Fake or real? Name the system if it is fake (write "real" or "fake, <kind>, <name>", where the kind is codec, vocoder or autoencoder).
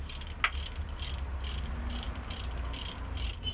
real